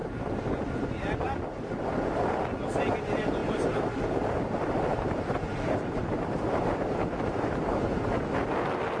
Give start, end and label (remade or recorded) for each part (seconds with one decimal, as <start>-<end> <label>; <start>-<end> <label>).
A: 0.0-0.8 remade; 0.8-3.4 recorded; 3.4-8.4 remade; 8.4-9.0 recorded